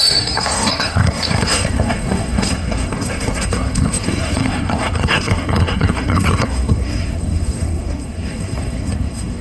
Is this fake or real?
fake